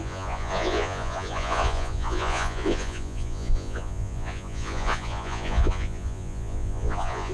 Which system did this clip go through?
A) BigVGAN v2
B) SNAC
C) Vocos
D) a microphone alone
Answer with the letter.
C